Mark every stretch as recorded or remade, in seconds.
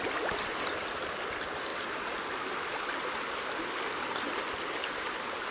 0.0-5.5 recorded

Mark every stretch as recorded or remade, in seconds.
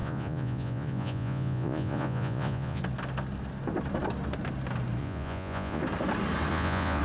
0.0-2.8 remade; 2.8-5.0 recorded; 5.0-5.8 remade; 5.8-6.5 recorded; 6.5-7.0 remade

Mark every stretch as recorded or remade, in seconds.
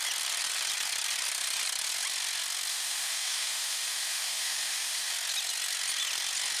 0.0-2.7 recorded; 2.7-5.1 remade; 5.1-6.6 recorded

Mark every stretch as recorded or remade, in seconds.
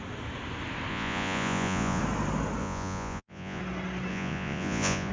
0.0-0.9 recorded; 0.9-2.0 remade; 2.0-2.6 recorded; 2.6-3.6 remade; 3.6-4.1 recorded; 4.1-5.1 remade